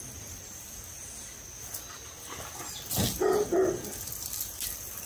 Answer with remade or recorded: recorded